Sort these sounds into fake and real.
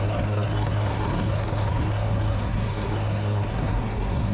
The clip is fake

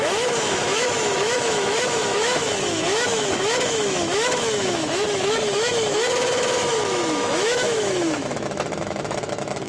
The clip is fake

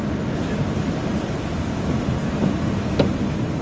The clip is real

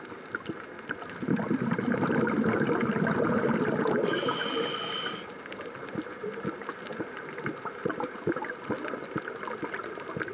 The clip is real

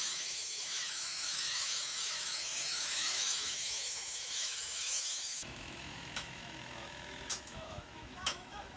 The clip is fake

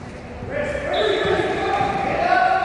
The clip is fake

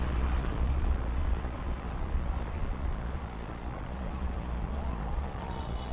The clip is fake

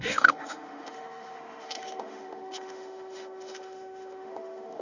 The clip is fake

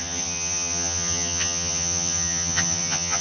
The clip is fake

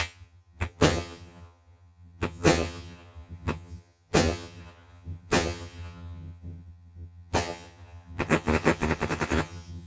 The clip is fake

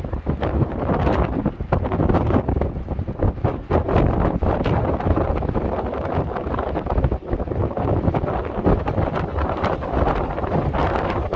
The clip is fake